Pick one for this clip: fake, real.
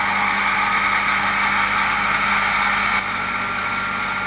real